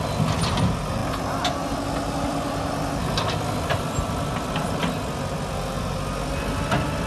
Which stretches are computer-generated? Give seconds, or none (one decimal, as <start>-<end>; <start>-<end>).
none